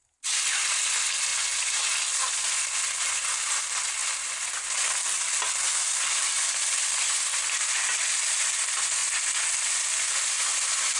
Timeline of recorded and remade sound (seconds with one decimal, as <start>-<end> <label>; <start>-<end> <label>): 0.0-11.0 recorded